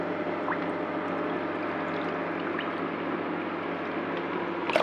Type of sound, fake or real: real